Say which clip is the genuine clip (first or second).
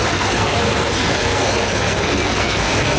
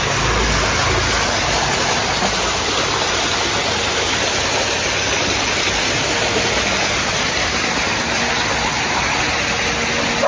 second